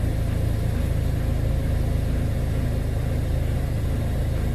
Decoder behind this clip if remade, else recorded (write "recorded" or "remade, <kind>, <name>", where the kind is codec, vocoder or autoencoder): recorded